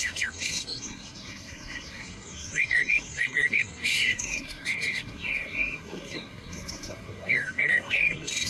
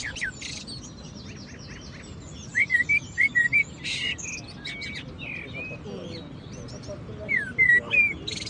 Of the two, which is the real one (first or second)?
second